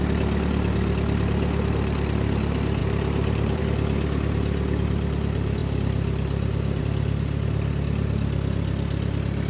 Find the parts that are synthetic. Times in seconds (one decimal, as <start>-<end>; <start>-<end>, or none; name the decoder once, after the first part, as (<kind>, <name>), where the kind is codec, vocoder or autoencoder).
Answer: 2.8-3.6 (vocoder, BigVGAN v2)